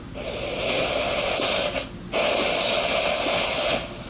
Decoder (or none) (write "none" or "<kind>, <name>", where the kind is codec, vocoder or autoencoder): none